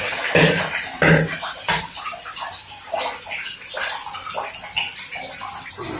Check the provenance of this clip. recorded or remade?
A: recorded